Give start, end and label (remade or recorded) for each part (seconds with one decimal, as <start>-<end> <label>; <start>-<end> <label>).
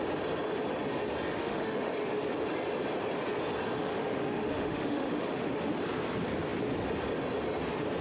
0.0-1.3 recorded; 1.3-1.9 remade; 1.9-3.8 recorded; 3.8-5.7 remade; 5.7-8.0 recorded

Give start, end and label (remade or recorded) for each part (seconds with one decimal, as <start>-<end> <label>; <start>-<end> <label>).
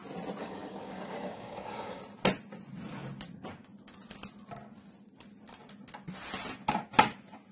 0.0-0.4 recorded; 0.4-2.0 remade; 2.0-7.5 recorded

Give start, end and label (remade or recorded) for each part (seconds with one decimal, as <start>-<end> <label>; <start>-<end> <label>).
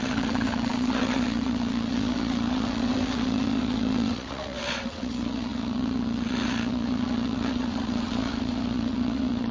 0.0-9.5 remade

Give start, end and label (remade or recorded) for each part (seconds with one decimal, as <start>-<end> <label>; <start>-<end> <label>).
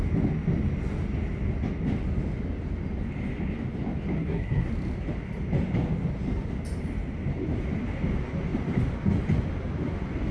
0.0-4.2 recorded; 4.2-4.7 remade; 4.7-10.3 recorded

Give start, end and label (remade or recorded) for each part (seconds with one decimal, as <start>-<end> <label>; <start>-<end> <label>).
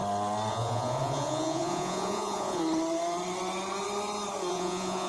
0.0-0.5 recorded; 0.5-2.6 remade; 2.6-4.5 recorded; 4.5-5.1 remade